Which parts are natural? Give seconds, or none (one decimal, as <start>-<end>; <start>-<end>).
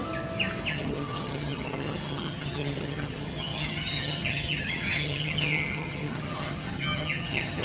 0.0-0.7